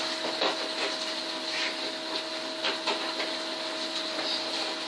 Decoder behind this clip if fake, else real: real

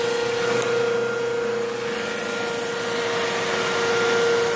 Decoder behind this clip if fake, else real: real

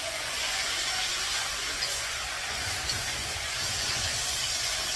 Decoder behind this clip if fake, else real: fake, vocoder, Vocos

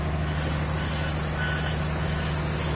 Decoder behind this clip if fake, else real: real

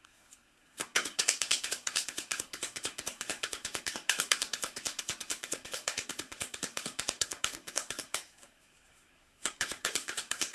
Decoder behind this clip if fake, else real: fake, codec, SNAC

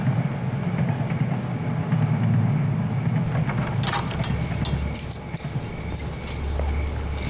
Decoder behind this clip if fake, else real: real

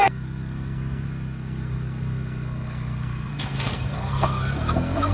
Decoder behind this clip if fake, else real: fake, codec, SNAC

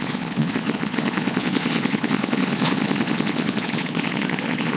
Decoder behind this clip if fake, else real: fake, vocoder, Vocos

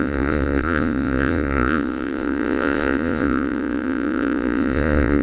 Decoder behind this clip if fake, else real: fake, vocoder, Vocos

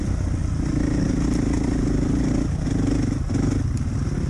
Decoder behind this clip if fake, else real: real